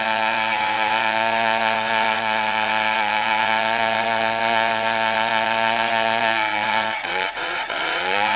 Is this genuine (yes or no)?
no